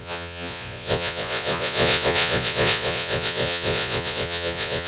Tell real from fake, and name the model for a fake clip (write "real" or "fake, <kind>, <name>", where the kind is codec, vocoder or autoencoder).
fake, vocoder, Vocos